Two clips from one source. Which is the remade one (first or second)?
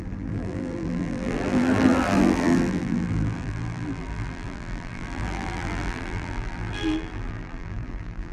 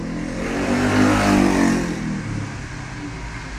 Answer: first